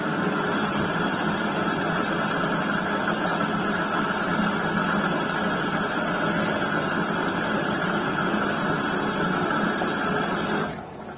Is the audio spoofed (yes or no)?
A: no